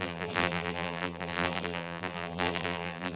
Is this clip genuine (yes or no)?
no